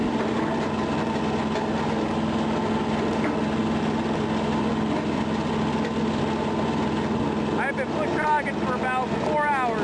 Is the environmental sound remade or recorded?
recorded